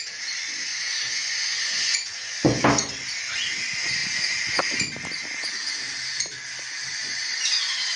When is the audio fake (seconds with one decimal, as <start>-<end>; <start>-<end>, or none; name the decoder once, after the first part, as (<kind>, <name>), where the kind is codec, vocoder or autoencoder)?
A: 0.7-2.6 (vocoder, Vocos); 6.9-7.4